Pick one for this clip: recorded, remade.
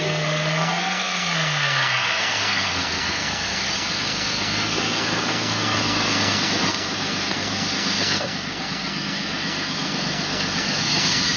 remade